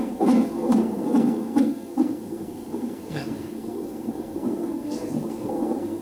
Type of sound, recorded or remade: remade